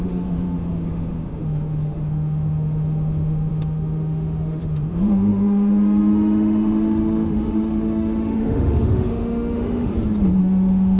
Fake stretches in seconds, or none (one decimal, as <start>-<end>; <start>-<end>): 0.0-9.9; 10.4-11.0